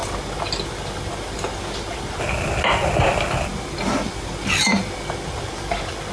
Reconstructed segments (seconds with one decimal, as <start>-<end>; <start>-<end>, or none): none